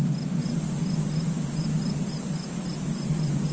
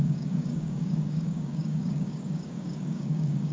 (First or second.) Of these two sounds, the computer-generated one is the second